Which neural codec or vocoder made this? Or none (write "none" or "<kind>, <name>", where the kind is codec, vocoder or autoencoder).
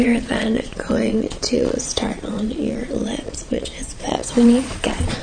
vocoder, Vocos